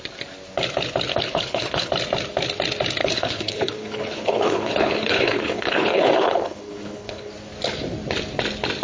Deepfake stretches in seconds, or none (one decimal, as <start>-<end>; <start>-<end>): 1.1-1.9; 3.0-7.3